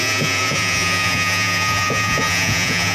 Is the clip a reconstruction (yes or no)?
yes